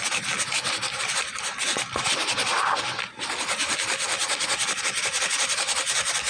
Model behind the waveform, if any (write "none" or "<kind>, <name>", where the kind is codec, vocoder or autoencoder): none